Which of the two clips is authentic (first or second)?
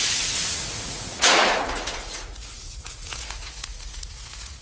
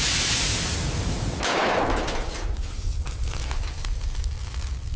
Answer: second